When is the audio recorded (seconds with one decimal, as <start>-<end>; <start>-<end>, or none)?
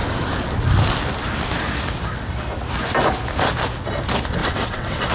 0.0-4.4